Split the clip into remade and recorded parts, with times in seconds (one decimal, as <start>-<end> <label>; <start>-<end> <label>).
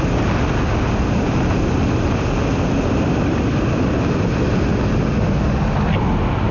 0.0-6.5 recorded